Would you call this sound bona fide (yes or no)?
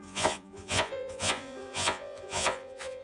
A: no